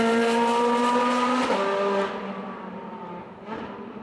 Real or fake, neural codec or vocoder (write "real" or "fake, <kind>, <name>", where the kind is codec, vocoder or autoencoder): real